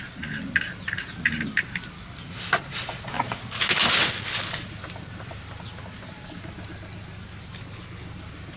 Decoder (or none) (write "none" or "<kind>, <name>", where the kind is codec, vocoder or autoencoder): none